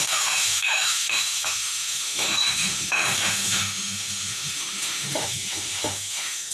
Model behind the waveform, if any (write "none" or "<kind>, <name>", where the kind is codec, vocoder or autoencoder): autoencoder, DAC-VAE